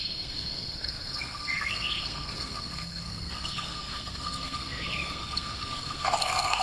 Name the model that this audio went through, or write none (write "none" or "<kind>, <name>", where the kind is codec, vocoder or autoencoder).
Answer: codec, SNAC